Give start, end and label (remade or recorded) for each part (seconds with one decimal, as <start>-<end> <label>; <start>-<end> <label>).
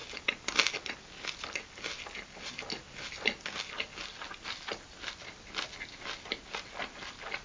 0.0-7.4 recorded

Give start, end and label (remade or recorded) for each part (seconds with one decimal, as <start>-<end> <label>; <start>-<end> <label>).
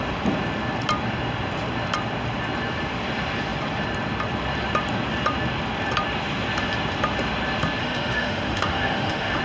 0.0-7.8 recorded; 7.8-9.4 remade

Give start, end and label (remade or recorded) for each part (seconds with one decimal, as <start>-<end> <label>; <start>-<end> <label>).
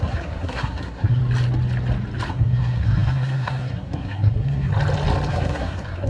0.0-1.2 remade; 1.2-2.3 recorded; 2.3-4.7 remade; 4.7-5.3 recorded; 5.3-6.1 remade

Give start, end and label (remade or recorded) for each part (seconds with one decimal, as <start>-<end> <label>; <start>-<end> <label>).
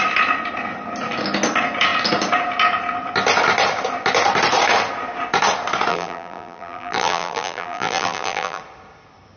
0.0-5.9 recorded; 5.9-8.6 remade; 8.6-9.4 recorded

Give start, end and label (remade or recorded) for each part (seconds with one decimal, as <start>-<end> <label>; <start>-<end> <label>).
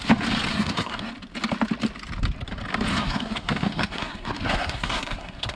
0.0-0.5 recorded; 0.5-1.1 remade; 1.1-2.9 recorded; 2.9-5.6 remade